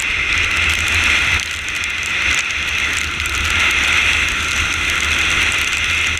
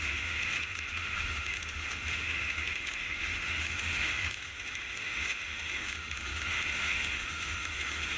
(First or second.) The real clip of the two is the first